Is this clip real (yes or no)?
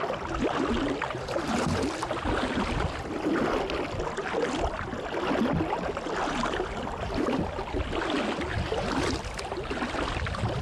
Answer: yes